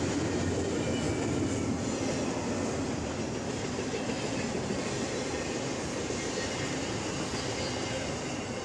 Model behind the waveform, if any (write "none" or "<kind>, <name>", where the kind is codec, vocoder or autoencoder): none